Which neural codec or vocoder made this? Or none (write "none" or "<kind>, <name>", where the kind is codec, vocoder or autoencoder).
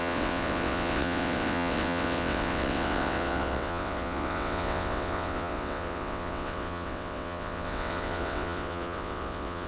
vocoder, WaveNeXt